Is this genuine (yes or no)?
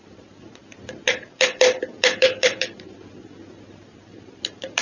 no